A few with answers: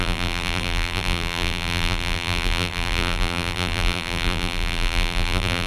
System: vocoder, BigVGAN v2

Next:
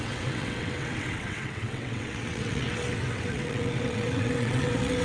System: vocoder, WaveNeXt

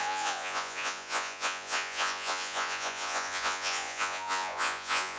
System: vocoder, Vocos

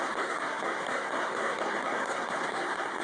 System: codec, SNAC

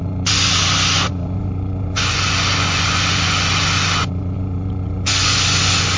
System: vocoder, Vocos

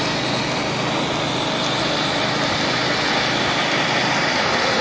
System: none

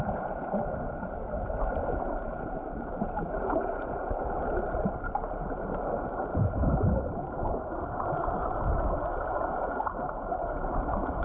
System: none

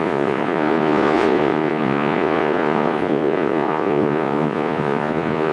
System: vocoder, Vocos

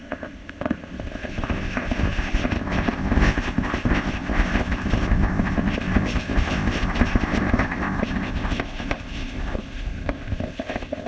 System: codec, ZipCodec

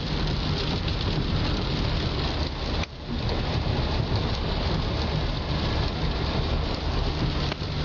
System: none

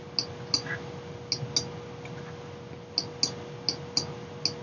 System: none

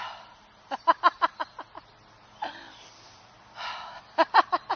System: none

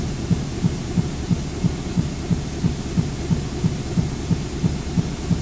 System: none